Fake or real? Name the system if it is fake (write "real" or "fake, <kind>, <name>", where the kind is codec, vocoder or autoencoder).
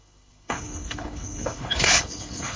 fake, codec, HILCodec